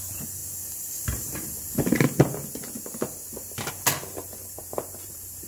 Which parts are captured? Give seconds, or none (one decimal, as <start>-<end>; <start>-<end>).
0.0-4.6